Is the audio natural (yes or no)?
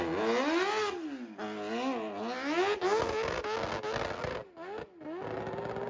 yes